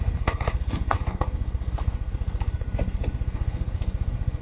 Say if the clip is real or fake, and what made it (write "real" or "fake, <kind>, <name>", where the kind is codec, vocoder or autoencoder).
fake, codec, SNAC